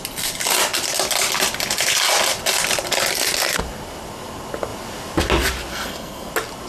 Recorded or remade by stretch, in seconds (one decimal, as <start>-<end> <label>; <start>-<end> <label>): 0.0-5.7 recorded; 5.7-6.3 remade; 6.3-6.7 recorded